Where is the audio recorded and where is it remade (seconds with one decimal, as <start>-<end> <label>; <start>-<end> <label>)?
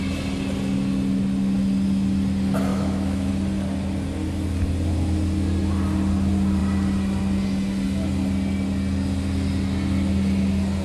0.0-2.7 recorded; 2.7-3.3 remade; 3.3-10.8 recorded